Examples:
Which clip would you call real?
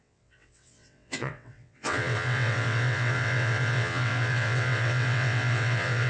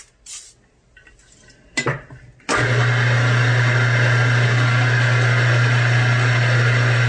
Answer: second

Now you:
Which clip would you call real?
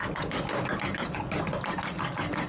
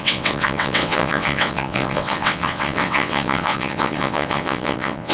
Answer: first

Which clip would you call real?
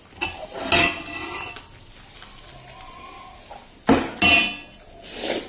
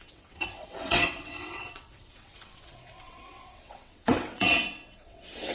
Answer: first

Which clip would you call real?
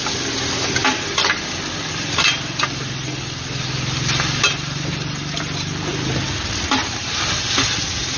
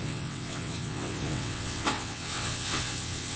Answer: first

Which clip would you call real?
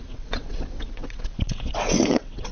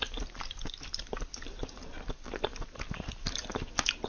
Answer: second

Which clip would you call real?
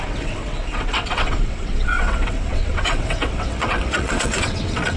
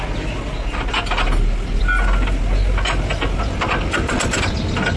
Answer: second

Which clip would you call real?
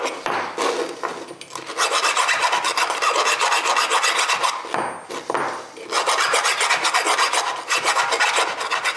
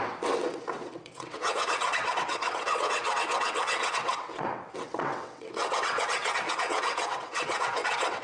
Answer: first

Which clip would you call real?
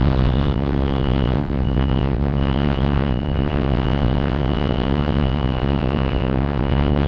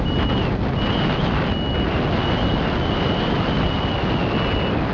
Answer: second